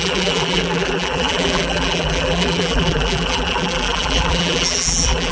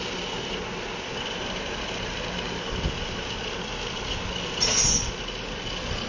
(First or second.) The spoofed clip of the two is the first